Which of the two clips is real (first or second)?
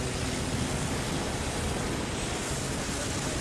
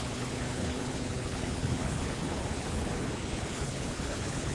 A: first